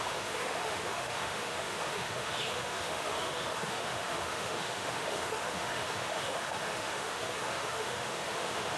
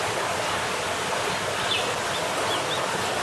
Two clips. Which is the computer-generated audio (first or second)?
first